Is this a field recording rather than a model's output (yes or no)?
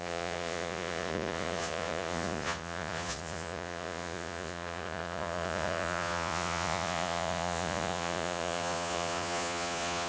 no